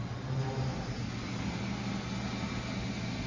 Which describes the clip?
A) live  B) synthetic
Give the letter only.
A